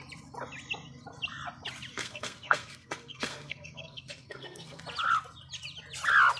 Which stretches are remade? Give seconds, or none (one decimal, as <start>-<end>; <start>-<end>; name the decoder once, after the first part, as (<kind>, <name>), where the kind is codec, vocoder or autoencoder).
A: 1.9-4.8 (codec, SNAC)

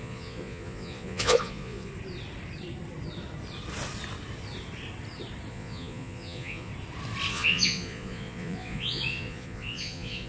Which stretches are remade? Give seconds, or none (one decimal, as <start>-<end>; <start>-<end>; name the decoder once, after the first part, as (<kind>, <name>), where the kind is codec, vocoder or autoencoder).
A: 0.0-1.9 (vocoder, Vocos); 5.5-6.7; 7.3-10.3

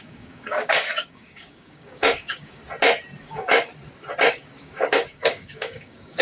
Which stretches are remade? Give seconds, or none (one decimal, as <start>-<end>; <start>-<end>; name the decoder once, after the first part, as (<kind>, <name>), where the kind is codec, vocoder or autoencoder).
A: 0.0-2.6 (codec, DAC); 3.2-3.7; 4.3-6.2

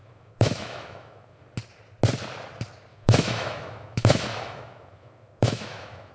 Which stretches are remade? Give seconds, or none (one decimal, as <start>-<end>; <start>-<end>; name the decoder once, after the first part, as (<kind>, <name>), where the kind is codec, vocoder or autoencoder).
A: 0.0-1.4 (autoencoder, DAC-VAE); 2.9-6.1

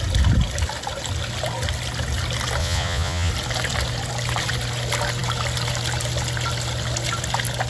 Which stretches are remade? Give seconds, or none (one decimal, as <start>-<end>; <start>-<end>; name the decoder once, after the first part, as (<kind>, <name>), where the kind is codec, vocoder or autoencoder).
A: 2.6-3.3 (vocoder, Vocos)